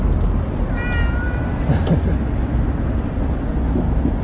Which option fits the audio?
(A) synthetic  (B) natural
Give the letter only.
B